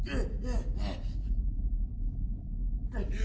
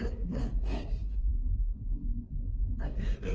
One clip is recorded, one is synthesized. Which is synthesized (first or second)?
second